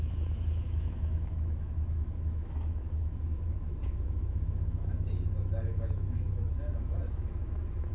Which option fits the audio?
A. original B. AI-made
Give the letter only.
B